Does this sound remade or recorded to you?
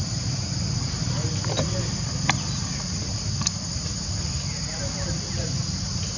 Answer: recorded